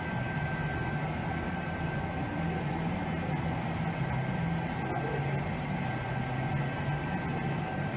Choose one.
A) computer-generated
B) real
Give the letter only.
B